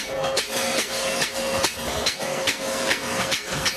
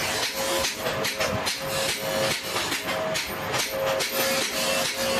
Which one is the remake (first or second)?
first